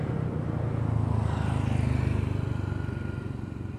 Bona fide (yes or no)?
yes